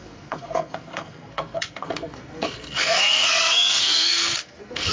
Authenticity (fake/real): fake